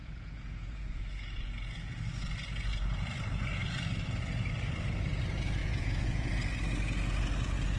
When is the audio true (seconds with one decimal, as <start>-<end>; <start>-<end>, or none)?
1.1-5.6; 6.3-7.8